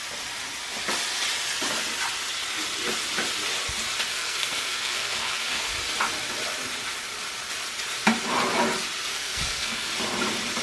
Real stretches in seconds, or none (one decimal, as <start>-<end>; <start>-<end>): 0.0-4.1; 5.7-9.1; 9.9-10.6